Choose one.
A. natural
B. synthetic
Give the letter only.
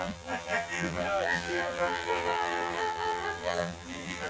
B